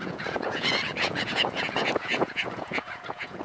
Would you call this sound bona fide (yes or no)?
no